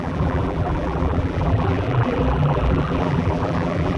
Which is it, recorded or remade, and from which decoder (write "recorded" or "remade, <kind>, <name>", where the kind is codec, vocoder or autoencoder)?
remade, vocoder, BigVGAN v2